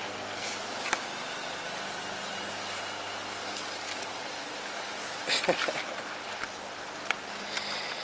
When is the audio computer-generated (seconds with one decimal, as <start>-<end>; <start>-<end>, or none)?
0.0-0.5